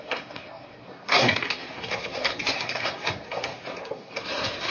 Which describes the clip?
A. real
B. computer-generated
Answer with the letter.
B